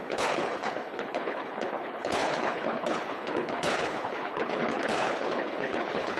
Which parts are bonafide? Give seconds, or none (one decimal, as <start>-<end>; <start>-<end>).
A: none